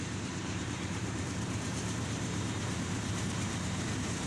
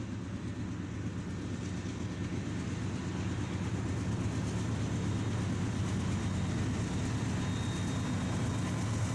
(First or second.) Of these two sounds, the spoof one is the first